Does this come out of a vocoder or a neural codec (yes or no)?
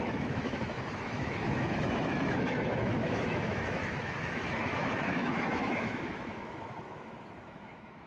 yes